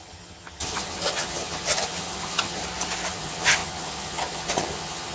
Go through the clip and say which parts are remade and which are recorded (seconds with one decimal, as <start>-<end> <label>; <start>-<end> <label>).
0.0-2.6 remade; 2.6-3.1 recorded; 3.1-5.1 remade